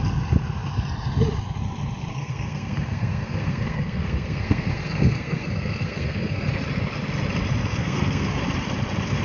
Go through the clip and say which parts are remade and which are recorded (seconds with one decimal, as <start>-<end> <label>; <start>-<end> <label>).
0.0-2.1 recorded; 2.1-6.5 remade; 6.5-7.8 recorded; 7.8-8.4 remade; 8.4-9.2 recorded